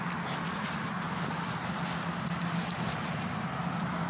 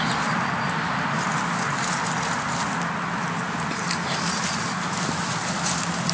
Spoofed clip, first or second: first